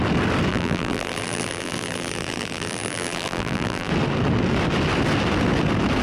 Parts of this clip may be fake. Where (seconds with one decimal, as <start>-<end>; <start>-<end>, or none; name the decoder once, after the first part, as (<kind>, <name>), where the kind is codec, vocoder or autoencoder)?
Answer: 0.5-3.9 (vocoder, BigVGAN v2)